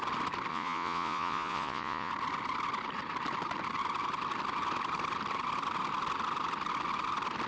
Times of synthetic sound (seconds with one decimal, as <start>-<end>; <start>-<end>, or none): 0.5-2.1